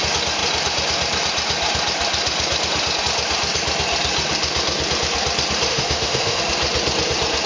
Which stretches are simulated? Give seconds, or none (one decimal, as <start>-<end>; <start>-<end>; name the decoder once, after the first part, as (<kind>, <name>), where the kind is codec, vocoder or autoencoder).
5.7-6.4 (autoencoder, DAC-VAE)